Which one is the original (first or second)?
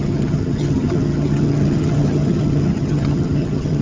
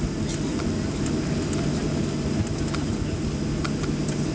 second